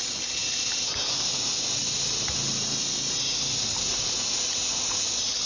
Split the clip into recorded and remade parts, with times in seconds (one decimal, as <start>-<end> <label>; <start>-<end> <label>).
0.0-5.5 recorded